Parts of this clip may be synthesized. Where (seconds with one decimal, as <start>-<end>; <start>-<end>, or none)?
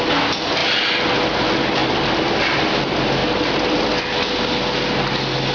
3.2-4.0